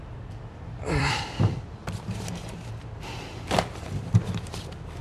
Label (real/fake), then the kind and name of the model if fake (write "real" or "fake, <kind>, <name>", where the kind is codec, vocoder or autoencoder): fake, vocoder, BigVGAN v2